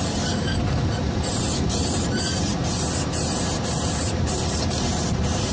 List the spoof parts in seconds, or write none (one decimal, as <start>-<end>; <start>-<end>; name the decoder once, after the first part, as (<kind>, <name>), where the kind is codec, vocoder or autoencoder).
0.0-0.5 (vocoder, BigVGAN v2); 1.3-2.5; 3.1-5.5